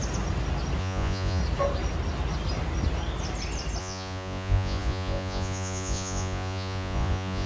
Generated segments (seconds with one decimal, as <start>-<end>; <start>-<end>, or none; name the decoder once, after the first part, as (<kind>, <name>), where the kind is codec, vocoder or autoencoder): 0.8-1.4 (vocoder, Vocos); 3.8-7.5